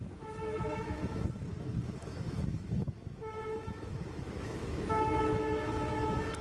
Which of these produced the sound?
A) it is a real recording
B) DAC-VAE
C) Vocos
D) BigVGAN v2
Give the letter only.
B